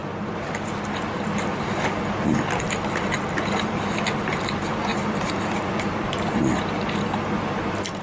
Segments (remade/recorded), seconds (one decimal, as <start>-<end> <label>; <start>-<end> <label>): 0.0-4.9 recorded; 4.9-6.2 remade; 6.2-8.0 recorded